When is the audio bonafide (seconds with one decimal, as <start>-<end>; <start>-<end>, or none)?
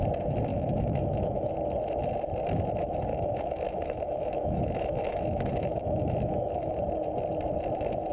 0.0-0.5; 1.5-3.1; 6.8-8.1